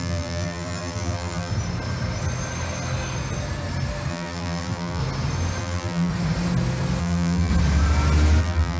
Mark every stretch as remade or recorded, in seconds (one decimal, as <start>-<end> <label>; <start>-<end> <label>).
0.0-1.5 remade; 1.5-4.1 recorded; 4.1-5.0 remade; 5.0-5.6 recorded; 5.6-6.1 remade; 6.1-7.0 recorded; 7.0-7.5 remade; 7.5-8.4 recorded; 8.4-8.8 remade